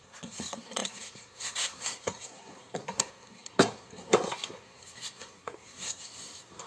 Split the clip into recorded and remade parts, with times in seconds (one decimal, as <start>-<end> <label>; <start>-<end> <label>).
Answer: 0.0-6.7 remade